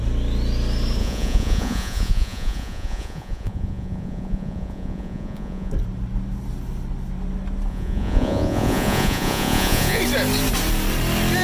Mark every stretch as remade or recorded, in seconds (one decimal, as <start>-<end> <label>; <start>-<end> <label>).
0.0-1.0 recorded; 1.0-5.7 remade; 5.7-7.7 recorded; 7.7-10.0 remade; 10.0-11.4 recorded